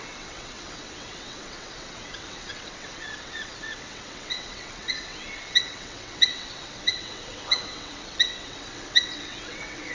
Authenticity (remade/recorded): remade